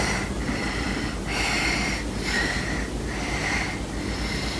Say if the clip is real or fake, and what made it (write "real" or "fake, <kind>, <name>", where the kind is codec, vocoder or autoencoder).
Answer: real